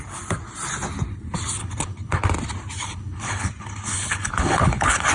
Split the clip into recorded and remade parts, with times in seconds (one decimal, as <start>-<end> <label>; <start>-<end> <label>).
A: 0.0-1.6 recorded; 1.6-2.2 remade; 2.2-2.8 recorded; 2.8-5.1 remade